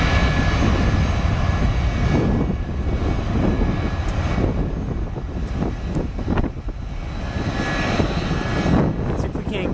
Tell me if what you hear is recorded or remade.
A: recorded